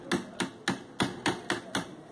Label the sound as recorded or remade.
recorded